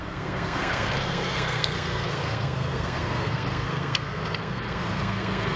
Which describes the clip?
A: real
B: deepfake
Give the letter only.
B